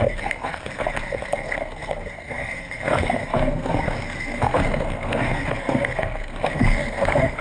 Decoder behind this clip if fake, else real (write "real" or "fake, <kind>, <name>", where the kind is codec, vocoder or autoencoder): fake, codec, SNAC